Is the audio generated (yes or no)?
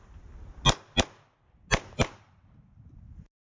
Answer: no